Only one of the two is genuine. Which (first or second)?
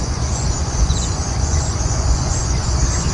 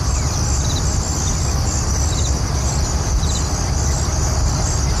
second